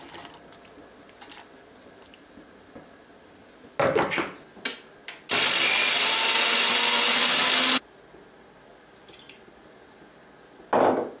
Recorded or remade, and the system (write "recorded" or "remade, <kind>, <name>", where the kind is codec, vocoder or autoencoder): recorded